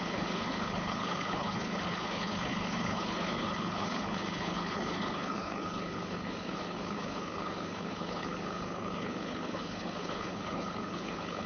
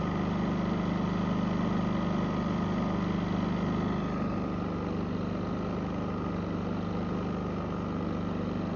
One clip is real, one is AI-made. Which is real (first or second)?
second